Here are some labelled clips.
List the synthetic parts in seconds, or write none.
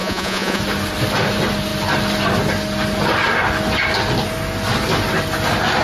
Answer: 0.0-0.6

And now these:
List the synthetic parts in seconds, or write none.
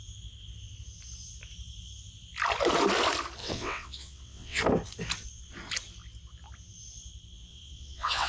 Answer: 3.4-4.6; 7.5-8.3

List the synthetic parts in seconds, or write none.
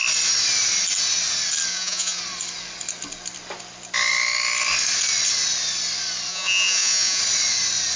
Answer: 1.7-2.2; 6.3-7.2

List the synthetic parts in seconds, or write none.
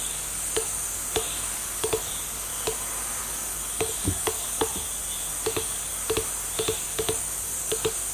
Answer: 0.0-2.5; 3.2-4.7; 5.5-5.9; 6.8-8.1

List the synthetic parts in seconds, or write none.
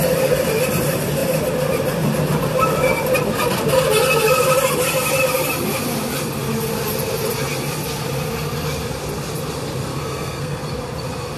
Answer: 9.9-10.6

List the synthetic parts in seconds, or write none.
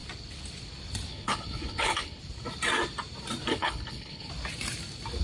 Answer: 1.1-2.2; 3.5-4.3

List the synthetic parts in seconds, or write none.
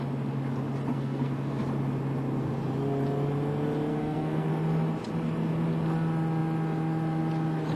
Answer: 0.9-1.6; 3.9-4.5